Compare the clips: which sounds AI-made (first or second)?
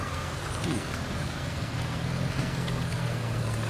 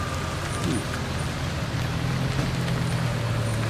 first